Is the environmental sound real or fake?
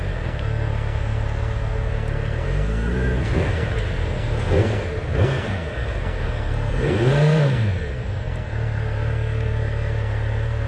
fake